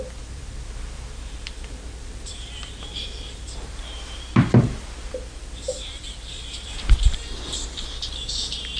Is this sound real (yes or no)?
no